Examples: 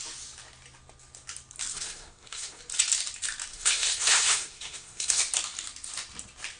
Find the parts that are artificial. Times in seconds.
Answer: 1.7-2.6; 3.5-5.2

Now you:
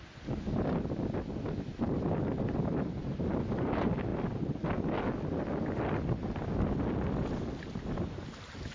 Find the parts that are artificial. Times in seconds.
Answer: none

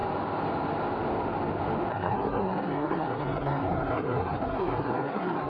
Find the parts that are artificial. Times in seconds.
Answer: 1.9-5.5

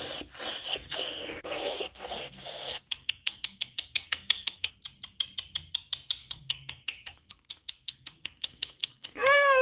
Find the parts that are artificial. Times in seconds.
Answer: 0.7-4.7; 6.2-9.6

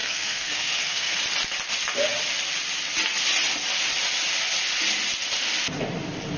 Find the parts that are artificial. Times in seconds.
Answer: 0.0-1.2

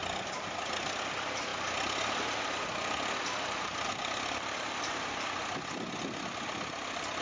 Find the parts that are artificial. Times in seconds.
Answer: none

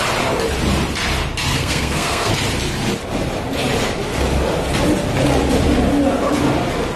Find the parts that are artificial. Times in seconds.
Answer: 1.5-2.3